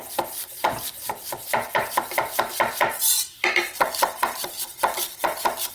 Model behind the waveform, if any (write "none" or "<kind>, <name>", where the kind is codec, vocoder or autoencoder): vocoder, BigVGAN v2